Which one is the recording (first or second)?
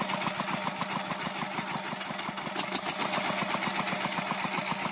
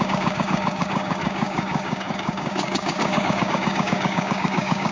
first